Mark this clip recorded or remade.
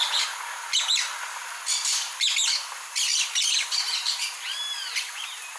recorded